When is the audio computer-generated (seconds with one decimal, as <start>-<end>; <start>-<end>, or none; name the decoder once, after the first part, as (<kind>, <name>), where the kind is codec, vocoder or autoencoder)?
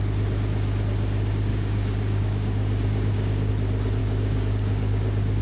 1.5-3.5 (codec, DAC); 4.0-5.4